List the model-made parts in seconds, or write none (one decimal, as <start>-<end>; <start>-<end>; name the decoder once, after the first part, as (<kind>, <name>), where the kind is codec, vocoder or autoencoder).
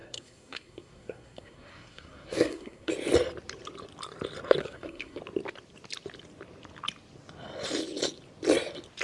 0.0-2.9 (codec, SNAC); 4.6-5.2